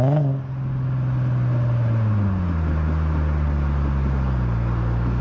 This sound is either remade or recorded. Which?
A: recorded